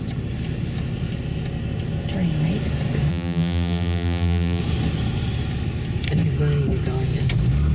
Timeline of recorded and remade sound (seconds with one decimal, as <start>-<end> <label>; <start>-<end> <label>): 0.0-3.1 recorded; 3.1-4.6 remade; 4.6-7.7 recorded